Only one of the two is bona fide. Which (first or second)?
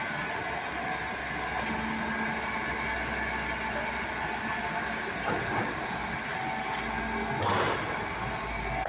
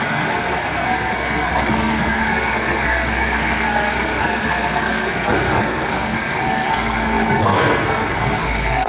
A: first